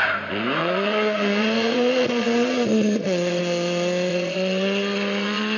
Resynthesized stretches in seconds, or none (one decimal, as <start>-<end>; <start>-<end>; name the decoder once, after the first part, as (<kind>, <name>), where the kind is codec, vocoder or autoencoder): 0.6-3.4 (vocoder, Vocos); 4.1-5.6